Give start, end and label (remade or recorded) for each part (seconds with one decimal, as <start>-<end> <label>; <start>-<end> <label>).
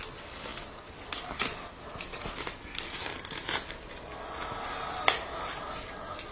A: 0.0-6.3 recorded